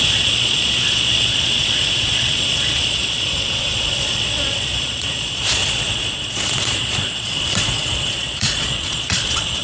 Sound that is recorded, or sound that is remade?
remade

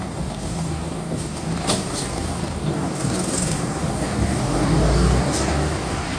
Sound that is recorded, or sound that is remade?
remade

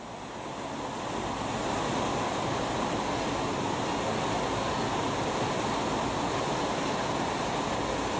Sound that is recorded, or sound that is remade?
recorded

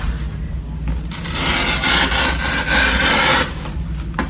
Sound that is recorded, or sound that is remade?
recorded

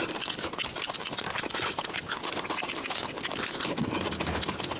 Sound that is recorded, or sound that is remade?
recorded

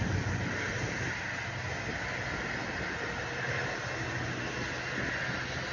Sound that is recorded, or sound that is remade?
recorded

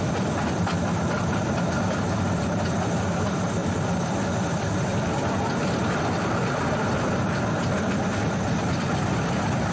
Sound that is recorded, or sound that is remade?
remade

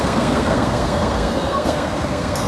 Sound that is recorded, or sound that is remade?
remade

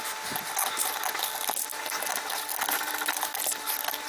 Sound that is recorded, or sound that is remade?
recorded